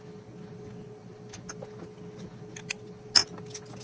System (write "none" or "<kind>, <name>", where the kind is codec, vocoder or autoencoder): none